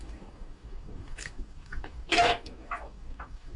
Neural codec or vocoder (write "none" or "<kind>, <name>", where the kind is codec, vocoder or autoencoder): codec, DAC